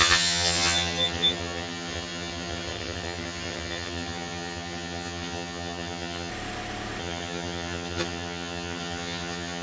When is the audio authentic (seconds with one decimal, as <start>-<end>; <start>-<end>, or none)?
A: 6.3-7.0